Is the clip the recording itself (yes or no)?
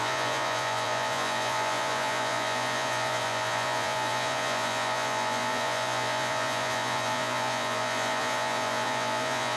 no